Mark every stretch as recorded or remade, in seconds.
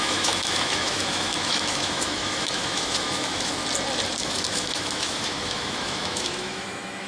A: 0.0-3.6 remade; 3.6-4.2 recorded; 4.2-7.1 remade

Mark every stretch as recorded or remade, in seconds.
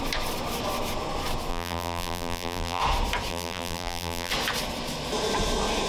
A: 0.0-1.5 recorded; 1.5-2.8 remade; 2.8-3.3 recorded; 3.3-4.3 remade; 4.3-5.9 recorded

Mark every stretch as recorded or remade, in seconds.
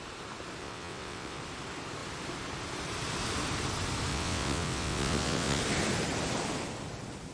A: 0.0-0.6 recorded; 0.6-1.4 remade; 1.4-4.1 recorded; 4.1-5.6 remade; 5.6-7.3 recorded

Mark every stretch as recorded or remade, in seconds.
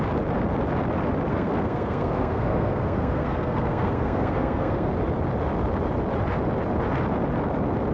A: 0.0-1.3 recorded; 1.3-4.9 remade; 4.9-7.9 recorded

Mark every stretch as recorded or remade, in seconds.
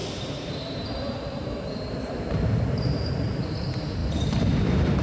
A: 0.0-5.0 remade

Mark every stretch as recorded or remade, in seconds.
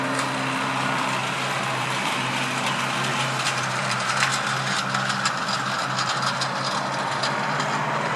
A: 0.0-1.2 recorded; 1.2-2.3 remade; 2.3-3.1 recorded; 3.1-4.1 remade; 4.1-8.2 recorded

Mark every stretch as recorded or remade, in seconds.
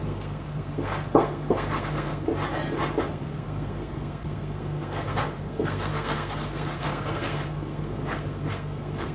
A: 0.0-2.3 remade; 2.3-3.1 recorded; 3.1-9.1 remade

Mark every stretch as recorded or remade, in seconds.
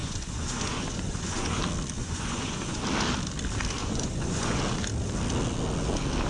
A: 0.0-1.6 remade; 1.6-2.0 recorded; 2.0-2.8 remade; 2.8-3.8 recorded; 3.8-4.6 remade; 4.6-6.3 recorded